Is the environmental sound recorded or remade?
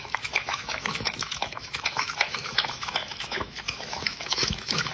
remade